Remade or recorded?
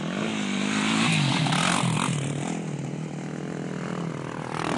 recorded